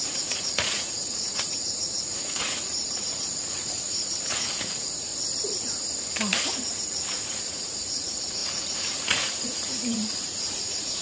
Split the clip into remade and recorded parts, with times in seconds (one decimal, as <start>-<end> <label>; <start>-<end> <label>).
0.0-5.1 remade; 5.1-6.2 recorded; 6.2-11.0 remade